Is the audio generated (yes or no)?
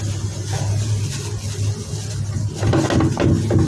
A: no